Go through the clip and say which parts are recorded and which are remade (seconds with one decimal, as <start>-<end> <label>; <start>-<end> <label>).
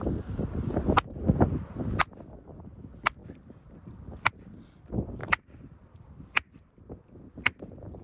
0.0-3.2 recorded; 3.2-4.3 remade; 4.3-5.2 recorded; 5.2-8.0 remade